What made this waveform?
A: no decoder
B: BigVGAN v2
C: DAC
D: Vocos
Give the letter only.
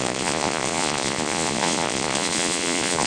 D